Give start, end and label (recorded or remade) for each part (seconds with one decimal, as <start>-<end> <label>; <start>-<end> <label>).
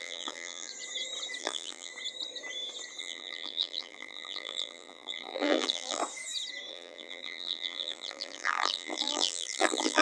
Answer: 0.0-0.7 remade; 0.7-1.4 recorded; 1.4-1.9 remade; 1.9-3.0 recorded; 3.0-6.0 remade; 6.0-6.7 recorded; 6.7-10.0 remade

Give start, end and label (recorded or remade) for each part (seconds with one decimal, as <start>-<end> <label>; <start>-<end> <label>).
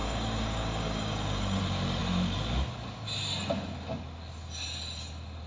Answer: 0.0-1.6 remade; 1.6-5.5 recorded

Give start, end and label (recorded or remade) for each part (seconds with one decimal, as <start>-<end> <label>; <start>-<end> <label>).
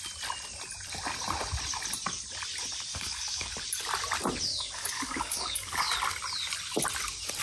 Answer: 0.0-2.9 recorded; 2.9-3.5 remade; 3.5-4.5 recorded; 4.5-5.7 remade; 5.7-7.4 recorded